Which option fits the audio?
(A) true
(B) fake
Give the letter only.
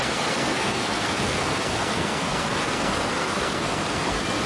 B